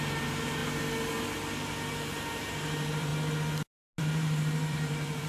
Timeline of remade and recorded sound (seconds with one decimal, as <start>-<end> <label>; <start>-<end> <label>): 0.0-0.6 remade; 0.6-2.5 recorded; 2.5-3.1 remade; 3.1-4.0 recorded; 4.0-5.3 remade